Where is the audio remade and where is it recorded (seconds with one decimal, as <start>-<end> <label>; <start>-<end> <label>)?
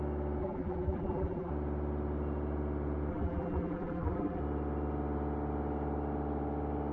0.0-0.4 recorded; 0.4-1.5 remade; 1.5-3.1 recorded; 3.1-4.4 remade; 4.4-6.9 recorded